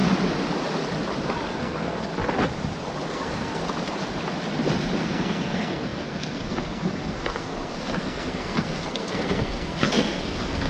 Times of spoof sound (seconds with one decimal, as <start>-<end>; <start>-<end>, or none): 1.6-2.1; 3.1-3.6; 5.0-10.7